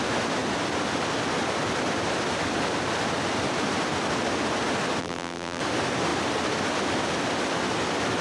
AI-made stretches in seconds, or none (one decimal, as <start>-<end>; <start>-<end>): 5.0-5.6